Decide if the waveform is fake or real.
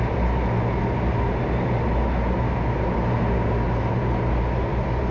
real